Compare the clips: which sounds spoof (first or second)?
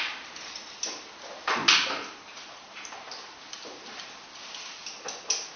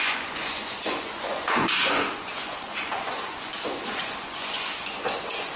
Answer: second